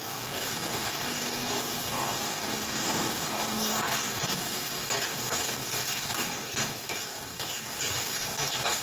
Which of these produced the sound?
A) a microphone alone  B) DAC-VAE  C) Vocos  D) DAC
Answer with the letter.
D